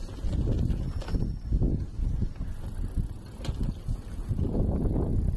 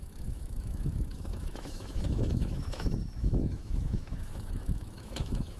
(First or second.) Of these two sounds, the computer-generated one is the second